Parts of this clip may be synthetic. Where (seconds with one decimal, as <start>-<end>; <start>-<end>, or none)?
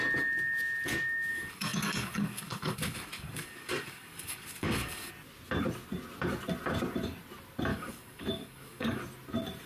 1.3-5.1; 7.7-9.0